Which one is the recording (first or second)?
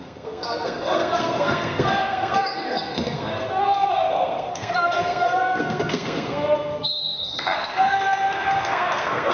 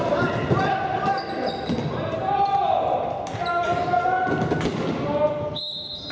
second